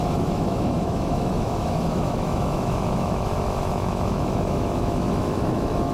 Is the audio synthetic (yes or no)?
yes